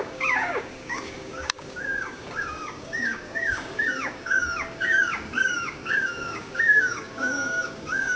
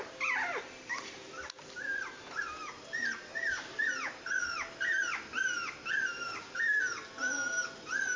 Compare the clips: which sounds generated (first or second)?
first